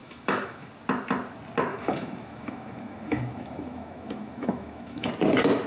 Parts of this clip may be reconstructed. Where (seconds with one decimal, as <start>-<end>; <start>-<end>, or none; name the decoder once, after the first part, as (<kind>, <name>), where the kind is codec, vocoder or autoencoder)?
0.0-0.7 (autoencoder, DAC-VAE); 1.7-5.1